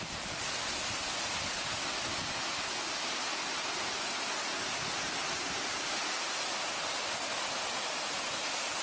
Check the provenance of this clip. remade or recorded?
recorded